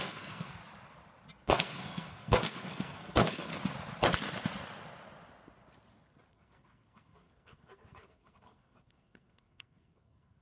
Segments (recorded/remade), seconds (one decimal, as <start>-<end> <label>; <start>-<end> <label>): 0.0-0.6 remade; 0.6-1.4 recorded; 1.4-3.5 remade; 3.5-6.3 recorded; 6.3-10.4 remade